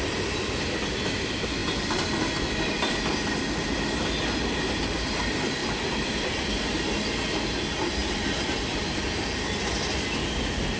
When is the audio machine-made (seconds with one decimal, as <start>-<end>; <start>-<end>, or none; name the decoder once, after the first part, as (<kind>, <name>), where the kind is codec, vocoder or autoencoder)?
1.6-3.2 (vocoder, BigVGAN v2); 5.6-6.6; 8.0-9.6